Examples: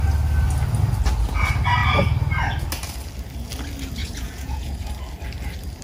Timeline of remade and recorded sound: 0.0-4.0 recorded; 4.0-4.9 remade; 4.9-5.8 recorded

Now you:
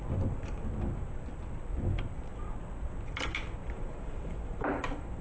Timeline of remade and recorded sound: 0.0-3.6 recorded; 3.6-5.2 remade

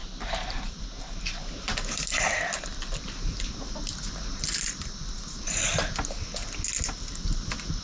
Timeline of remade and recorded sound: 0.0-0.7 remade; 0.7-7.8 recorded

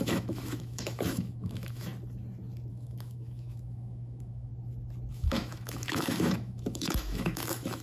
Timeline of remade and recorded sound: 0.0-1.9 remade; 1.9-2.7 recorded; 2.7-4.5 remade; 4.5-5.1 recorded; 5.1-7.8 remade

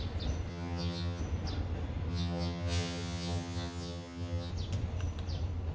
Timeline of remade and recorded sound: 0.0-0.5 recorded; 0.5-1.2 remade; 1.2-2.1 recorded; 2.1-4.5 remade; 4.5-5.7 recorded

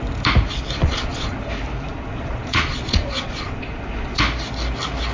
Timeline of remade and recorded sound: 0.0-0.8 recorded; 0.8-1.4 remade; 1.4-1.9 recorded; 1.9-4.2 remade; 4.2-5.1 recorded

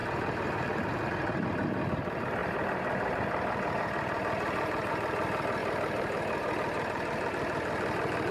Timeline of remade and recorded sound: 0.0-1.0 remade; 1.0-2.4 recorded; 2.4-4.9 remade; 4.9-5.6 recorded; 5.6-7.3 remade; 7.3-8.3 recorded

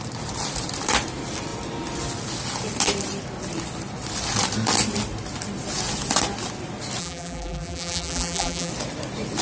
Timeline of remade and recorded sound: 0.0-7.0 recorded; 7.0-8.7 remade; 8.7-9.4 recorded